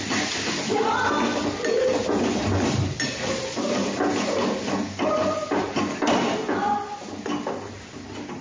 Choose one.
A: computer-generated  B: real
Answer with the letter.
B